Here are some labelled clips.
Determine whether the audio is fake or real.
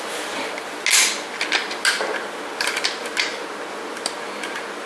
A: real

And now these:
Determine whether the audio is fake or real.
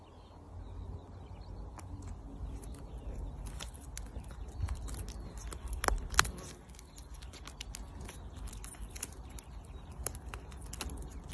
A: real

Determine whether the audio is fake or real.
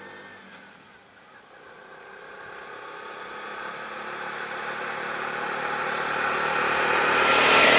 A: real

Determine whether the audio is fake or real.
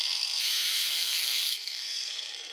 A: fake